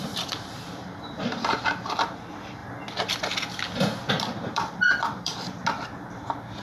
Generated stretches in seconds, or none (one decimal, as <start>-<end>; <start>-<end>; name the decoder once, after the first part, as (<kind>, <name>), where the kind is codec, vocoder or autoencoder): 0.0-2.6 (vocoder, BigVGAN v2); 4.1-5.6

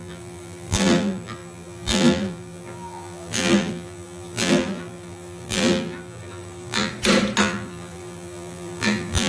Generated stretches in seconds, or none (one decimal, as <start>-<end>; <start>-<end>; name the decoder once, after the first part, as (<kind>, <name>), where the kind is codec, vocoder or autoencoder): 0.0-6.9 (vocoder, BigVGAN v2); 7.4-9.3

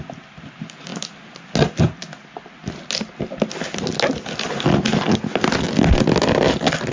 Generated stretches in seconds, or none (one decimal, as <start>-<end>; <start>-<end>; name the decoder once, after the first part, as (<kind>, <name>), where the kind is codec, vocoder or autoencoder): none